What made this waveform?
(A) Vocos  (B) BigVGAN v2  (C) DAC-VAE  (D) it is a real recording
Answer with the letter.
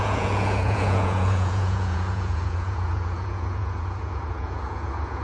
A